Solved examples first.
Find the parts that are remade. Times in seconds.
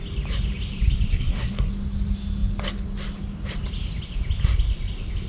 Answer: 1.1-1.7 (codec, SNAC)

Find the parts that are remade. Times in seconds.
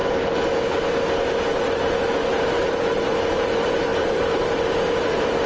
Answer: 2.0-5.5 (vocoder, BigVGAN v2)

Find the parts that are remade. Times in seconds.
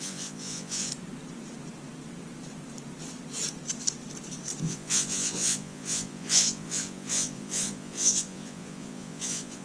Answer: 0.0-0.9 (vocoder, Vocos); 4.6-9.6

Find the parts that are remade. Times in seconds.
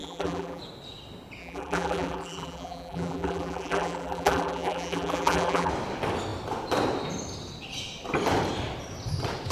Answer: 0.0-0.6 (vocoder, BigVGAN v2); 1.4-5.7